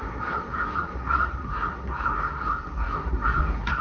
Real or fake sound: fake